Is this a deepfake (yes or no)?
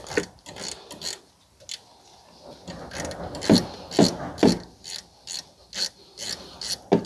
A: no